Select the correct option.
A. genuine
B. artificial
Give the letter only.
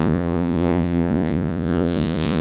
B